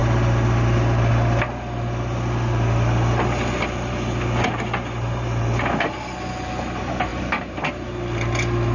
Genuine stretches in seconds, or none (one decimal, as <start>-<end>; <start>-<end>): 0.0-7.1; 7.7-8.7